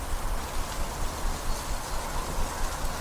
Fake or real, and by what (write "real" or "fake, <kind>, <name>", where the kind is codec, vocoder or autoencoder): real